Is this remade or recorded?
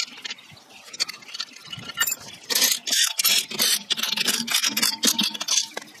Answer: recorded